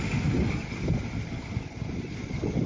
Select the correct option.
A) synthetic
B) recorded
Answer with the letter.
B